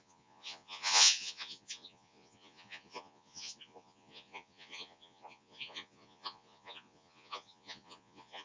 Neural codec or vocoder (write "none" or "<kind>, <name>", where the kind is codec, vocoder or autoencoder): vocoder, Vocos